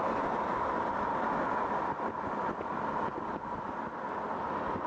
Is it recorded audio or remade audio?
recorded